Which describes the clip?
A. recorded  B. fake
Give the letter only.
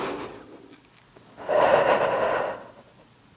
A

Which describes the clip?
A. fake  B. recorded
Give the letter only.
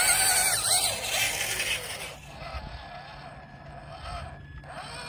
B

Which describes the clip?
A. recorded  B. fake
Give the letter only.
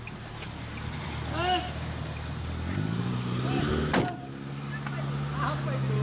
A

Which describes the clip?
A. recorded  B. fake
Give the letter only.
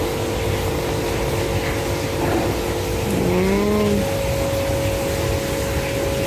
A